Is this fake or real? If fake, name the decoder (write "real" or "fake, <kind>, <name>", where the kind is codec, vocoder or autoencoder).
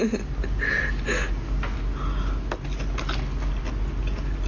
real